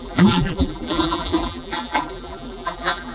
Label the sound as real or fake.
fake